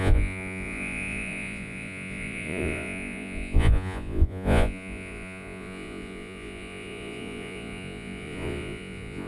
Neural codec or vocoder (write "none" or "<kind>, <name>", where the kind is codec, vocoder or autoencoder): vocoder, Vocos